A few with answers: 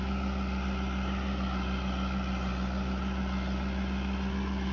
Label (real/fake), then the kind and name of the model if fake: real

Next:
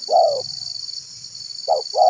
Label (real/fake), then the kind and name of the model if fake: real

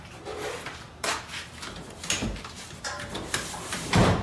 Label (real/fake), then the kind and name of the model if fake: fake, vocoder, BigVGAN v2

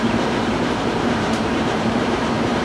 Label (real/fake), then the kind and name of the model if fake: fake, vocoder, BigVGAN v2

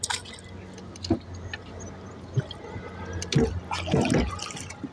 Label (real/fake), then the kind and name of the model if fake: real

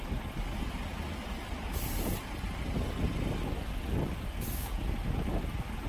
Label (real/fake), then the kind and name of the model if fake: real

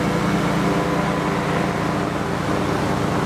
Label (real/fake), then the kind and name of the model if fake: real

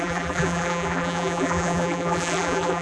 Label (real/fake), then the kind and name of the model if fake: fake, vocoder, BigVGAN v2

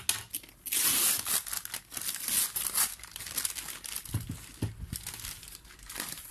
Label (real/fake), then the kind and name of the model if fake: real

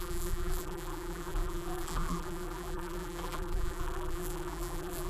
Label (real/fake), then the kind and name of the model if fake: fake, vocoder, BigVGAN v2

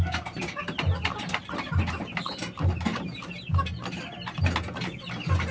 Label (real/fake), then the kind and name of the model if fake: real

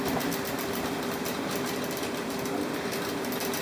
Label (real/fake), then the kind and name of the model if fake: fake, vocoder, BigVGAN v2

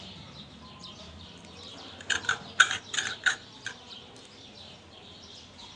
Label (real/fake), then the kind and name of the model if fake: fake, vocoder, BigVGAN v2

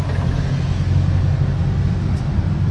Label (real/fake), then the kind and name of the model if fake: real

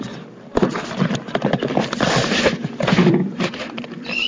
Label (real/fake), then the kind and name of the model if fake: fake, vocoder, BigVGAN v2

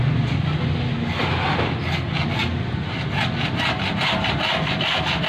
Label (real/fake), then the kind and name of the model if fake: real